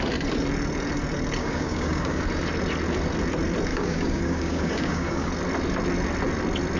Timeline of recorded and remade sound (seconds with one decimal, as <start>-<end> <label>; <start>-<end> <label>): 0.0-1.4 recorded; 1.4-2.2 remade; 2.2-3.7 recorded; 3.7-5.3 remade; 5.3-6.8 recorded